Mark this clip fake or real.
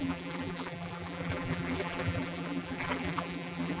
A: fake